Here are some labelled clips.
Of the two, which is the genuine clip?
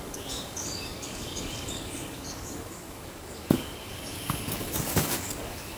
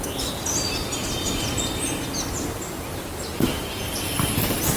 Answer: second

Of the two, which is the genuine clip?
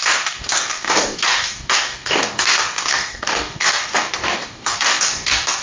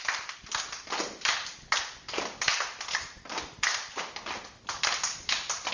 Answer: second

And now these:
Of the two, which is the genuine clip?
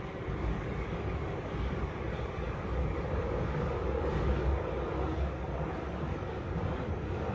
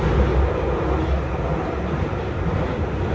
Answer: second